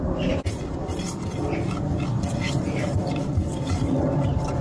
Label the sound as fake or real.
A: real